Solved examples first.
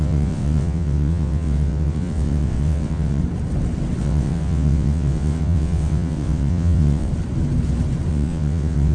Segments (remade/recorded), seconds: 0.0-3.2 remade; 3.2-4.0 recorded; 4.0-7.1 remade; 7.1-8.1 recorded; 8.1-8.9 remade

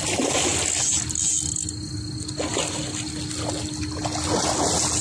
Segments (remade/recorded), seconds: 0.0-5.0 recorded

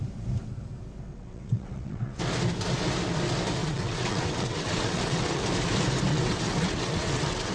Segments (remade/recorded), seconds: 0.0-1.1 recorded; 1.1-2.2 remade; 2.2-3.6 recorded; 3.6-5.4 remade; 5.4-6.1 recorded; 6.1-7.5 remade

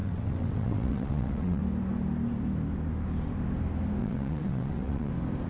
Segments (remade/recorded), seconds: 0.0-1.6 remade; 1.6-4.0 recorded; 4.0-5.1 remade; 5.1-5.5 recorded

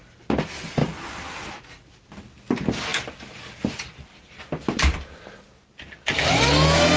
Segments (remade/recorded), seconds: 0.0-7.0 recorded